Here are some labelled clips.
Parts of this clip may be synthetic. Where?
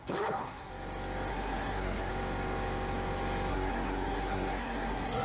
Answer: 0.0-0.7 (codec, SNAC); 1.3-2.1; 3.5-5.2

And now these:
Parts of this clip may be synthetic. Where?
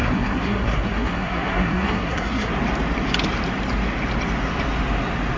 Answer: 0.0-2.5 (codec, SNAC)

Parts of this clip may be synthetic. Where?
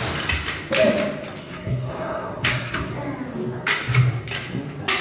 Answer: 1.4-2.9 (codec, SNAC)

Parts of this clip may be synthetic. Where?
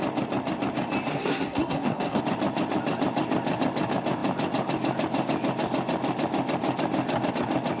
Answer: 1.1-2.2 (codec, SNAC)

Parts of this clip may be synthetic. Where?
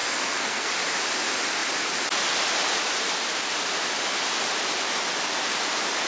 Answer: 0.0-0.7 (codec, SNAC)